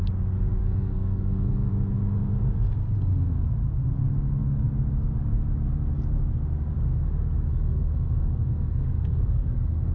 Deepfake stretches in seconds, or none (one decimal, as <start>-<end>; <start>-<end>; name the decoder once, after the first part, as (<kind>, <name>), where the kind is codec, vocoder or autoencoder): 0.6-1.7 (codec, SNAC); 7.5-9.9

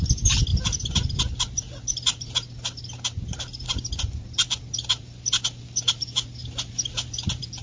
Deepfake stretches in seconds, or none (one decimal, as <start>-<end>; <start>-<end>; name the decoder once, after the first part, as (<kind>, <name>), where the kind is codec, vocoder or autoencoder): none

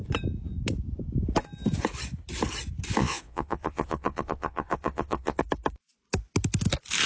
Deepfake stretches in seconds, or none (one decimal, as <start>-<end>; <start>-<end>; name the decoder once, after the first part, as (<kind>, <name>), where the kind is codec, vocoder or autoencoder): 3.0-5.4 (vocoder, Vocos)

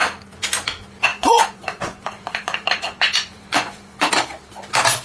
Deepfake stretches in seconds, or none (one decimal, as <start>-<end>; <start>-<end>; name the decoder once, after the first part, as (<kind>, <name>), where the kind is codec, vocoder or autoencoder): 1.1-4.1 (vocoder, Vocos)